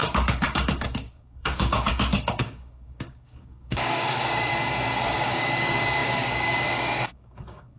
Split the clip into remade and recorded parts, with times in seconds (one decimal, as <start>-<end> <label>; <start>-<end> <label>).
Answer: 0.0-4.5 remade; 4.5-5.0 recorded; 5.0-7.8 remade